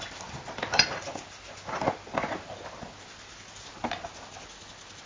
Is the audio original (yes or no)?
yes